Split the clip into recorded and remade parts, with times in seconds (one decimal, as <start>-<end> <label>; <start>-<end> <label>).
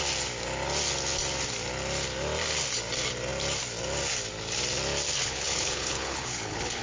0.0-5.2 recorded; 5.2-6.8 remade